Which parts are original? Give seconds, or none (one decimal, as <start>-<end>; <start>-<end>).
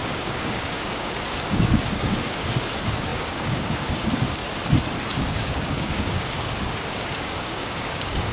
4.4-5.1